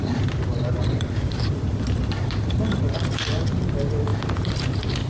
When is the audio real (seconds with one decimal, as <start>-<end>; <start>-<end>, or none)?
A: 0.0-0.8; 3.5-4.1